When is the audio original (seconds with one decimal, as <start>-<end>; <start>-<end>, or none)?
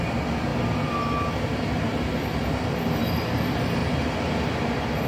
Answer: 0.0-5.1